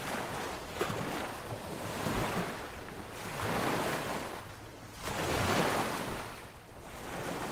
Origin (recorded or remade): recorded